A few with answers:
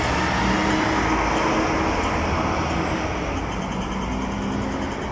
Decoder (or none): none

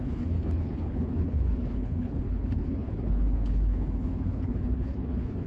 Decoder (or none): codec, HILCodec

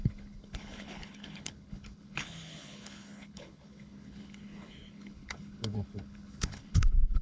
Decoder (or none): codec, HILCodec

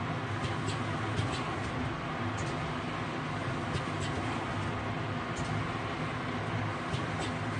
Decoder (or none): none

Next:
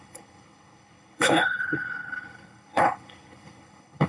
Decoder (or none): codec, HILCodec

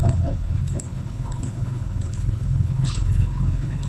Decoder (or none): codec, HILCodec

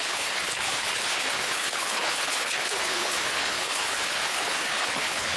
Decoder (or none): codec, HILCodec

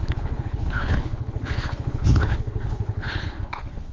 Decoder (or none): codec, HILCodec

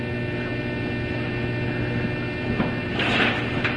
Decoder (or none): none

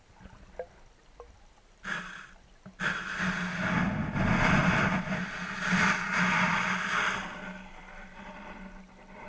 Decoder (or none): none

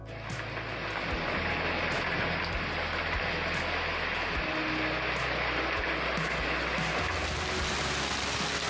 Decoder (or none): none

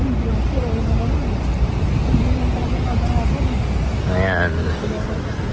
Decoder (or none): none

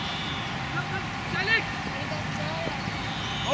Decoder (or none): none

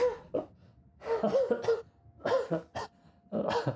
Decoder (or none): none